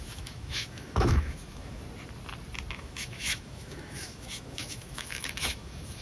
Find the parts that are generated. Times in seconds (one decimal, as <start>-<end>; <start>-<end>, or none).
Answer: 0.0-1.8; 2.7-6.0